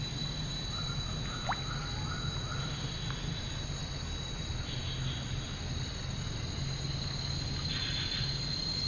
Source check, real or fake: real